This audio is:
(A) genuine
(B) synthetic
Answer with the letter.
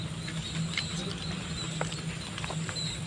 A